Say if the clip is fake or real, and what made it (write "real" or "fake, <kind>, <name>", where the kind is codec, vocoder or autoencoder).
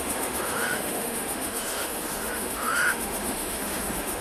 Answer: fake, autoencoder, DAC-VAE